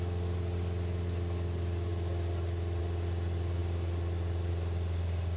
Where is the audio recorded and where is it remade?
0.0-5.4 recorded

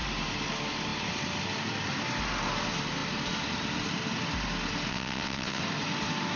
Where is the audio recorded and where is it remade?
0.0-4.9 recorded; 4.9-5.6 remade; 5.6-6.4 recorded

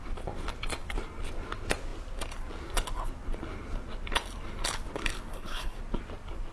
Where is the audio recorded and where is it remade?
0.0-5.3 recorded; 5.3-5.8 remade; 5.8-6.5 recorded

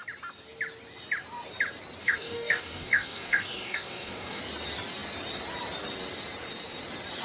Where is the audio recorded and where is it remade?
0.0-2.0 recorded; 2.0-4.4 remade; 4.4-7.2 recorded

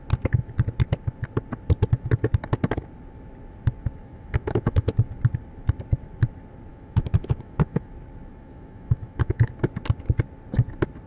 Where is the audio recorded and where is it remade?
0.0-4.0 recorded; 4.0-4.9 remade; 4.9-6.7 recorded; 6.7-7.9 remade; 7.9-8.3 recorded; 8.3-9.5 remade; 9.5-11.1 recorded

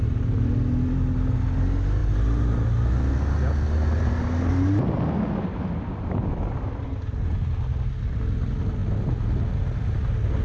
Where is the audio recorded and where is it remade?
0.0-10.4 recorded

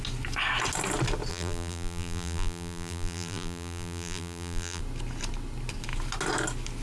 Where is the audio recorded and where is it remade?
0.0-1.3 recorded; 1.3-4.8 remade; 4.8-6.8 recorded